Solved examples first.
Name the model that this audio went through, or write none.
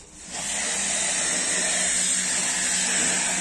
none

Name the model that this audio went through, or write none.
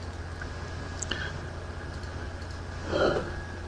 none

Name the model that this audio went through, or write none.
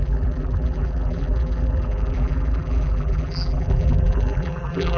vocoder, BigVGAN v2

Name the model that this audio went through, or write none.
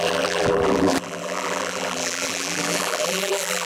vocoder, BigVGAN v2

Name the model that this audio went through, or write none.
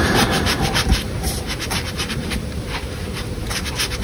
vocoder, BigVGAN v2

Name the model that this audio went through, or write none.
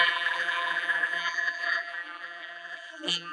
vocoder, BigVGAN v2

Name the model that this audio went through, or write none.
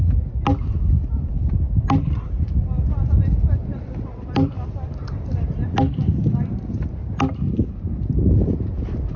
none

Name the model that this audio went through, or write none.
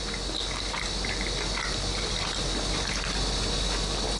none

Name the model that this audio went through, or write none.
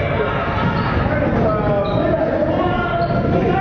none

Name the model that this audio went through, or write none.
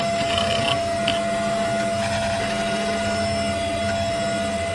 none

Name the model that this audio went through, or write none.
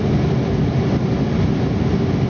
none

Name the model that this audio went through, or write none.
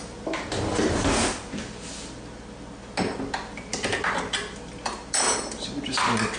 none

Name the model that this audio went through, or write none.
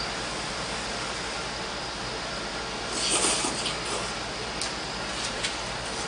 none